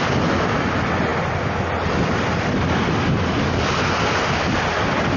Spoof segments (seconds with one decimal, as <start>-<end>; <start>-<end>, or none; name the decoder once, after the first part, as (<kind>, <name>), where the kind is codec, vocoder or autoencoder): none